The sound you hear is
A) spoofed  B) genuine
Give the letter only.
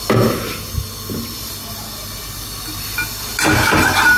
B